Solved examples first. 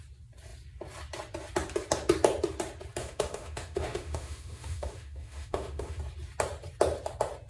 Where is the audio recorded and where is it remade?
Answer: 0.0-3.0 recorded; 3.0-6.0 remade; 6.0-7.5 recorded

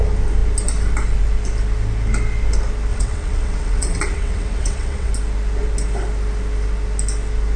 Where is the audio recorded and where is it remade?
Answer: 0.0-2.9 recorded; 2.9-5.1 remade; 5.1-7.6 recorded

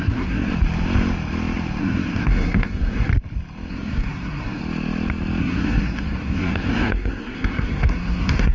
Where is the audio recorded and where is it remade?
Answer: 0.0-0.5 remade; 0.5-1.8 recorded; 1.8-3.1 remade; 3.1-3.7 recorded; 3.7-4.6 remade; 4.6-5.4 recorded; 5.4-8.5 remade

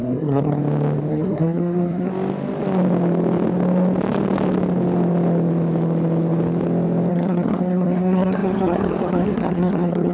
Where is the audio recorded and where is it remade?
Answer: 0.0-0.6 remade; 0.6-1.1 recorded; 1.1-2.1 remade; 2.1-7.1 recorded; 7.1-10.1 remade